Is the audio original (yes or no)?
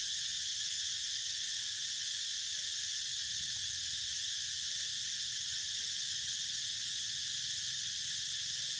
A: yes